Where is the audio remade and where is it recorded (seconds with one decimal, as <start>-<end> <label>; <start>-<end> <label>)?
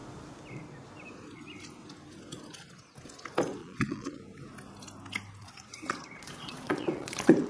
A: 0.0-3.6 recorded; 3.6-4.2 remade; 4.2-5.4 recorded; 5.4-7.5 remade